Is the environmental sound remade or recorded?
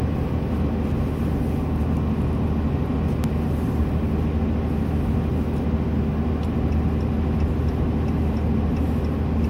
recorded